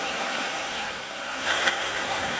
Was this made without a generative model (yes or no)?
no